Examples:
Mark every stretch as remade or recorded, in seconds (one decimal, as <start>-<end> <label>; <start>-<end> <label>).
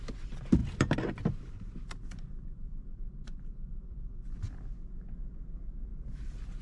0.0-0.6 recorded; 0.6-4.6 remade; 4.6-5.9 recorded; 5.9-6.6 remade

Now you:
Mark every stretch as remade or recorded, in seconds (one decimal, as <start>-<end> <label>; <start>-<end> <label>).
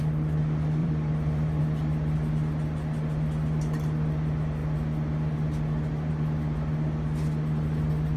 0.0-0.8 recorded; 0.8-1.6 remade; 1.6-8.2 recorded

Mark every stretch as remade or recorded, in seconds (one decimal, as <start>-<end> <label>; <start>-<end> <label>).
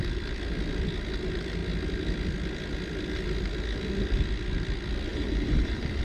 0.0-5.1 recorded; 5.1-6.0 remade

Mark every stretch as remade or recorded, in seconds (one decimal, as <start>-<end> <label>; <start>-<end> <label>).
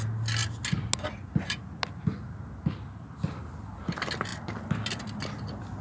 0.0-5.8 recorded